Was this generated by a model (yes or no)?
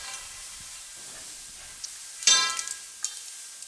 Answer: yes